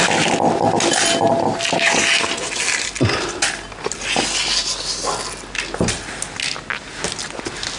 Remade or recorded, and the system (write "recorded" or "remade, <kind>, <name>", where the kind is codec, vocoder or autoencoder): recorded